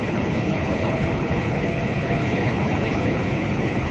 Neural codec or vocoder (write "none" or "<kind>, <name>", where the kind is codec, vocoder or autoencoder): codec, HILCodec